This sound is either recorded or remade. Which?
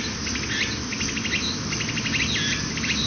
recorded